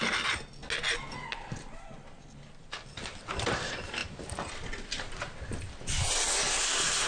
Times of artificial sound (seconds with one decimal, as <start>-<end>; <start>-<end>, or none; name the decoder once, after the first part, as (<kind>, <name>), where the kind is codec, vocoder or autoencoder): none